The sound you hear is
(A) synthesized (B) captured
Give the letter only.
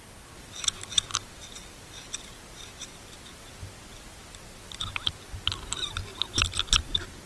B